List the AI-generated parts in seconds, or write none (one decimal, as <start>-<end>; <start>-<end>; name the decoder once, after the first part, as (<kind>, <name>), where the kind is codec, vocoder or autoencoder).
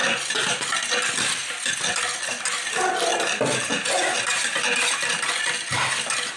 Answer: 0.0-0.7 (vocoder, BigVGAN v2); 3.1-5.4